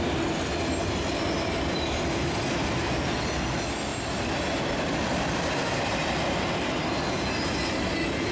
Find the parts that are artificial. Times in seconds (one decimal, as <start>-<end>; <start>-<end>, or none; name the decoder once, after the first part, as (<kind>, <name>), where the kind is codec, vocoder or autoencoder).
none